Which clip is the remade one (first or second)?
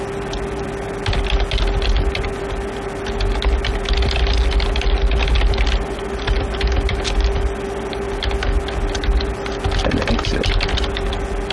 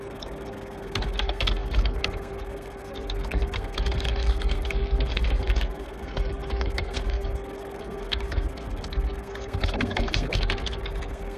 second